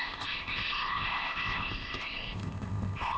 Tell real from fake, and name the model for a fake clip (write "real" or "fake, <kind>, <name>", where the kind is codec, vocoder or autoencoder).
fake, codec, ZipCodec